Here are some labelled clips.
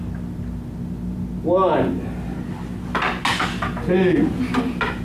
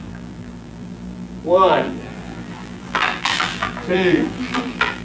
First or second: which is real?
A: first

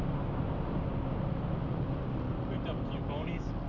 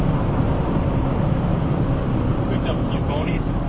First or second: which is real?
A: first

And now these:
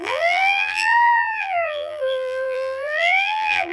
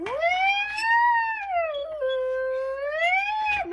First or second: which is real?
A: second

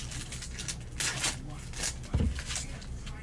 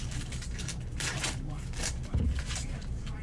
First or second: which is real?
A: first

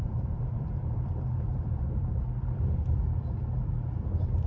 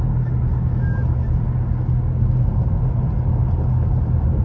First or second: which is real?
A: second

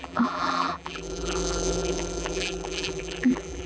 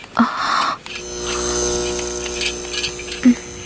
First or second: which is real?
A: second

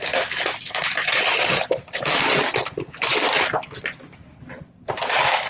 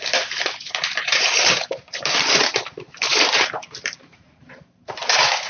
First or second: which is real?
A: first